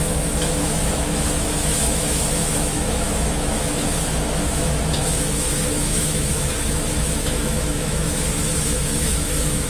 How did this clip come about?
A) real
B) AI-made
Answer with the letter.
B